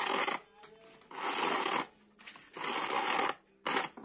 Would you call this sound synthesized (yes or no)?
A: no